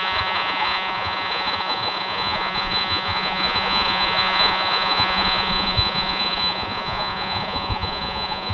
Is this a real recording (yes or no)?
no